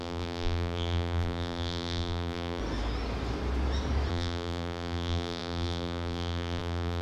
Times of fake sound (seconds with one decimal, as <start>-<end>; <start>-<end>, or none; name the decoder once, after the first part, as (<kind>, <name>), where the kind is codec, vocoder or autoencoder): 0.0-2.6 (vocoder, BigVGAN v2); 4.1-7.0